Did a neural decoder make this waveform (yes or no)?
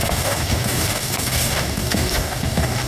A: yes